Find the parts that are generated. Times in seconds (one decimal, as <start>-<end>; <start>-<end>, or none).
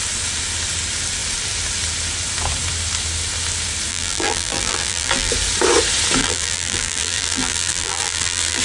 3.9-5.3; 6.2-8.6